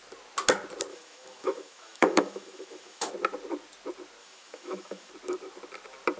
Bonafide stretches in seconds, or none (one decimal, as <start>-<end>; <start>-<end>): 0.0-0.9; 3.1-4.2; 5.1-6.2

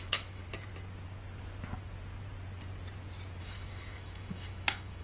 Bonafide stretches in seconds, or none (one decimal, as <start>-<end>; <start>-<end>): 0.4-3.4

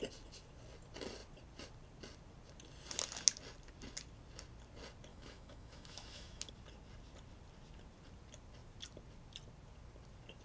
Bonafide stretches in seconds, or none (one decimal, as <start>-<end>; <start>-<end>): 0.0-5.1; 6.5-10.4

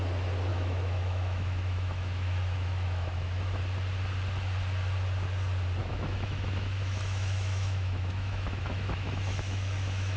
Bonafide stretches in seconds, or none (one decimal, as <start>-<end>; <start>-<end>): 0.0-0.5; 3.6-5.8